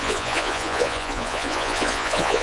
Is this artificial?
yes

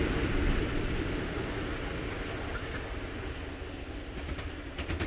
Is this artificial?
no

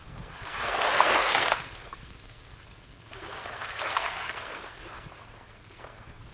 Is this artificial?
yes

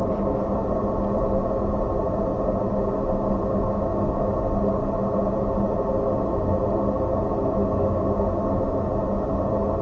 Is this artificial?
no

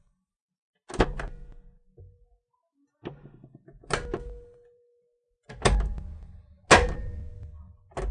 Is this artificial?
no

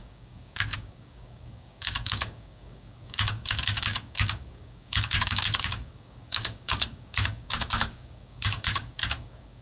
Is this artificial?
yes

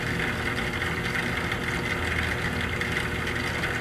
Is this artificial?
no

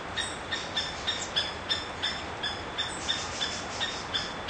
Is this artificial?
no